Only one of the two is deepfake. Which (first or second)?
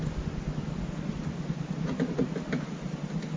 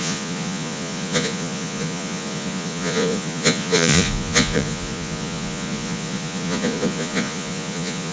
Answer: second